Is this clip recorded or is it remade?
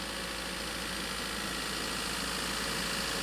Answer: recorded